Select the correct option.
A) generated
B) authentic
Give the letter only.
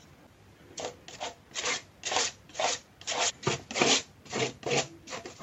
B